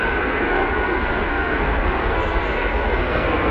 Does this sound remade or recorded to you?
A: remade